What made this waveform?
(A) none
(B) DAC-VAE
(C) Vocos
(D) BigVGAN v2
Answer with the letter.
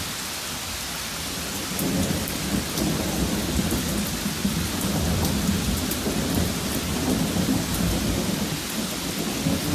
A